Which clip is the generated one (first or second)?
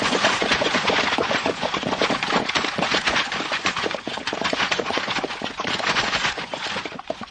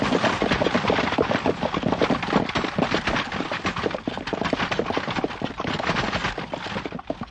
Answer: first